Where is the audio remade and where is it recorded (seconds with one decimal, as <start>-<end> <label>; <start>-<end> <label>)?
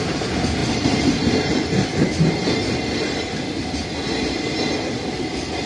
0.0-5.7 recorded